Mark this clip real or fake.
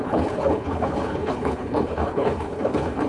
fake